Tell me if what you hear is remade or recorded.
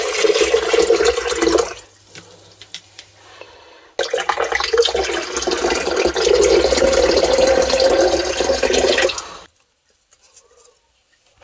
recorded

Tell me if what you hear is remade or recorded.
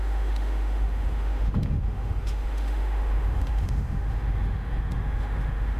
remade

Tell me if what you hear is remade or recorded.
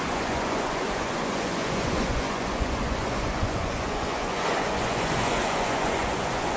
remade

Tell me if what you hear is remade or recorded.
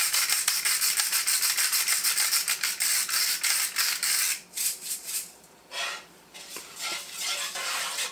remade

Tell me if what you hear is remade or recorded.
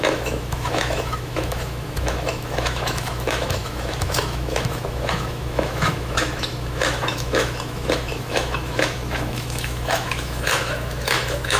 remade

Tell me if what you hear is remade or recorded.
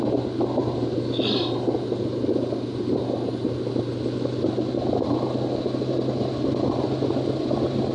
recorded